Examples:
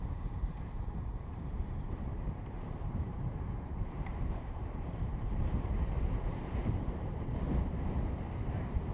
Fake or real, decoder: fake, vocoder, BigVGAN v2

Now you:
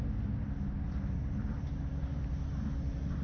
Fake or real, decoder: real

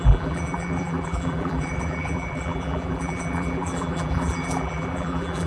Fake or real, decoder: fake, vocoder, BigVGAN v2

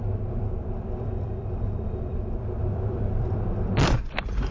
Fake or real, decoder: fake, vocoder, BigVGAN v2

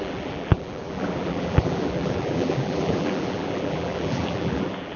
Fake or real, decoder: fake, vocoder, BigVGAN v2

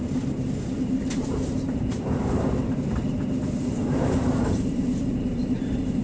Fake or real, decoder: fake, vocoder, BigVGAN v2